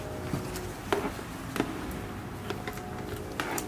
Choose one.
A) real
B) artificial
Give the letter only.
A